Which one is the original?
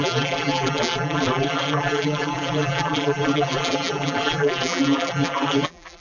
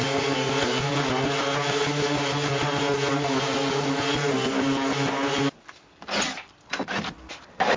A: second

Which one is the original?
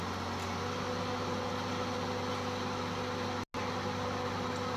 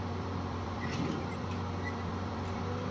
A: first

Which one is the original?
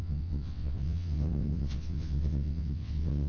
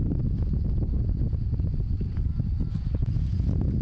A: second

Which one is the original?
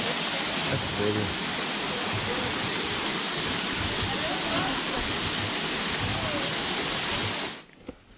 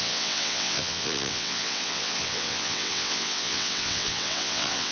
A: first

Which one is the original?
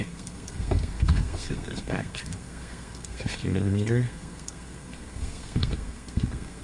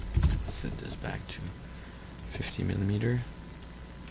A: second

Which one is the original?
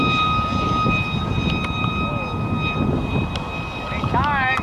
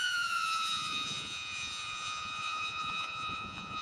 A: first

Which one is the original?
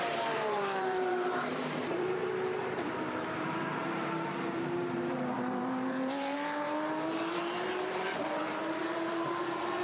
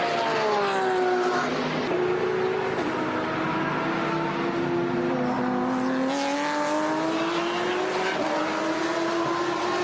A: second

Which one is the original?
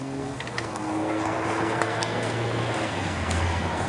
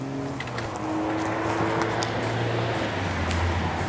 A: second